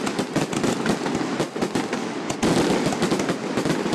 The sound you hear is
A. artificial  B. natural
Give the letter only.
B